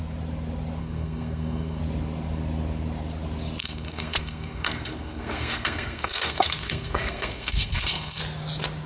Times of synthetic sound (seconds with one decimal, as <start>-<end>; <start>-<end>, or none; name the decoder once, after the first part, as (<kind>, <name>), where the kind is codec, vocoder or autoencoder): 0.8-1.8 (codec, SNAC); 3.6-8.2